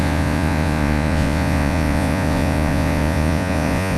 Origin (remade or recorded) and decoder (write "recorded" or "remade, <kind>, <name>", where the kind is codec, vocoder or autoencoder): remade, vocoder, Vocos